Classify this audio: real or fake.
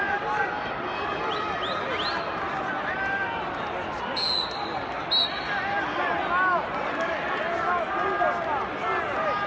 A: real